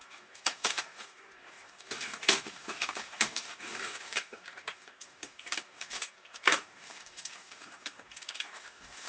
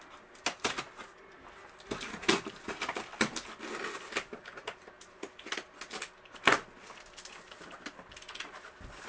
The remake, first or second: first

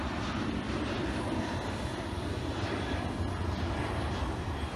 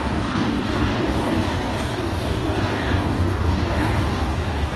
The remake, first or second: second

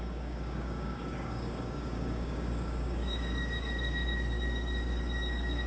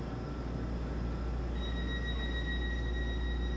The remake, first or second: first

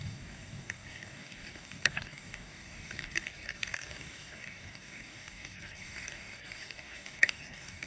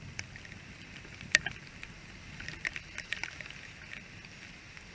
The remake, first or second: first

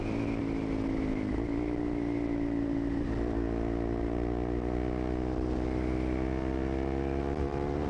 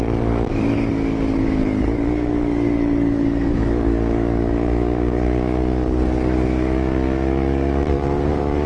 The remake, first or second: second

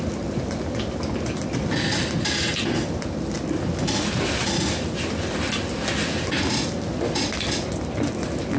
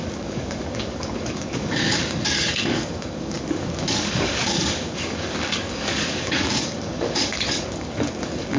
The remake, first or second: second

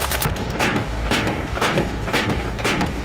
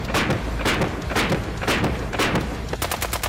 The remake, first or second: first